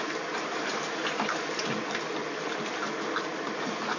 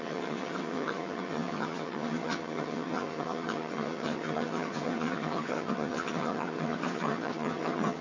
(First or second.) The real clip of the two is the first